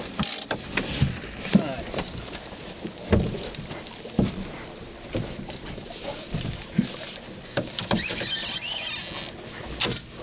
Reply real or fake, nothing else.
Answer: real